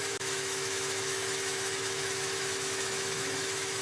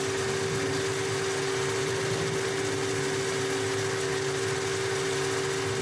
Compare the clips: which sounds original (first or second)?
second